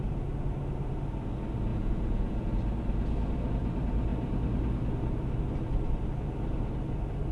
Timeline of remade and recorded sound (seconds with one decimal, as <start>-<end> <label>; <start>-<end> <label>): 0.0-1.7 recorded; 1.7-2.6 remade; 2.6-7.3 recorded